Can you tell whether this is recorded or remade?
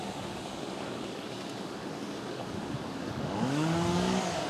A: remade